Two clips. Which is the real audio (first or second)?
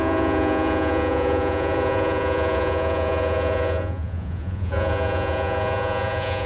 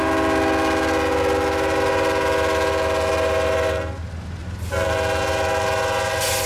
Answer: second